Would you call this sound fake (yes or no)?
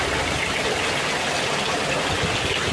no